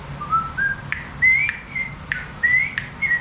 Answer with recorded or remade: recorded